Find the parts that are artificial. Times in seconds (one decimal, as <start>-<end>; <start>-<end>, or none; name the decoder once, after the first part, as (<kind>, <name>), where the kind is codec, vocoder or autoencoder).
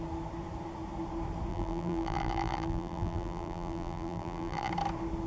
1.5-4.7 (vocoder, BigVGAN v2)